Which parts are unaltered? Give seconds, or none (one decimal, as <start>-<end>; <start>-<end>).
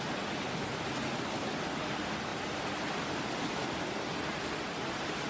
0.0-5.3